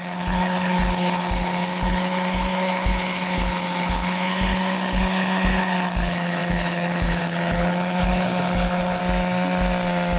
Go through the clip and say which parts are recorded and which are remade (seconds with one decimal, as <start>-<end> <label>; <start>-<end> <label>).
0.0-9.0 remade; 9.0-10.2 recorded